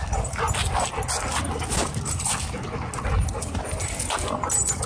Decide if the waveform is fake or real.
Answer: real